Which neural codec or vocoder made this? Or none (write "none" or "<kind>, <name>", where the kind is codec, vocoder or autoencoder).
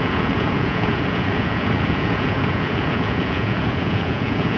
vocoder, Vocos